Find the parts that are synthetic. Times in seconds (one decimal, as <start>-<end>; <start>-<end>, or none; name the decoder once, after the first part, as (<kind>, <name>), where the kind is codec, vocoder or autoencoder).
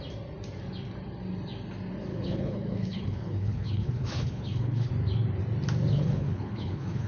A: 2.1-4.9 (codec, HILCodec); 5.9-7.1